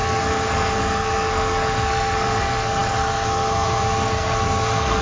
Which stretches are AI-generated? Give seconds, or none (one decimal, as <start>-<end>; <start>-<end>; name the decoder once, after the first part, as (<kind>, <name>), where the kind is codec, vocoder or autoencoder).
0.0-5.0 (codec, SNAC)